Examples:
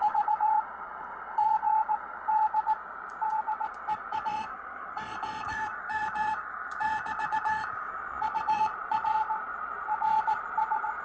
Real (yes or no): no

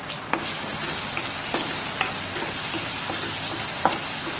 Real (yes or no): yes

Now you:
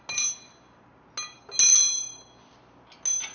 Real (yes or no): yes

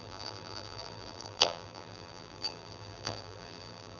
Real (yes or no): no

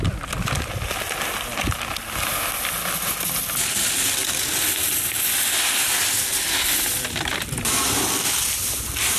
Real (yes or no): yes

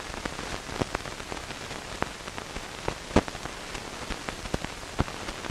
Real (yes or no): yes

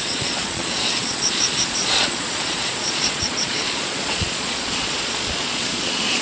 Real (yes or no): no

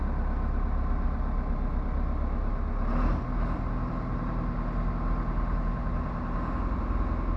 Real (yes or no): yes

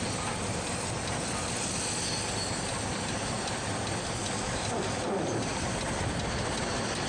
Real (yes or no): yes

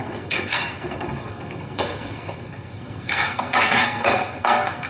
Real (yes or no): no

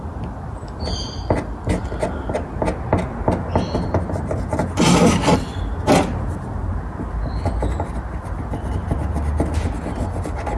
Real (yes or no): yes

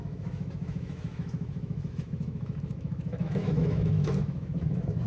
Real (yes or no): no